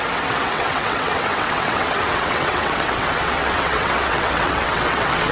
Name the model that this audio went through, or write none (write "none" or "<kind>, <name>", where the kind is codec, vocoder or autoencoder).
vocoder, WaveNeXt